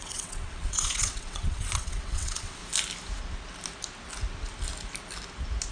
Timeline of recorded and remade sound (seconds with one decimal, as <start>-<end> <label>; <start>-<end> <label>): 0.0-2.6 remade; 2.6-5.7 recorded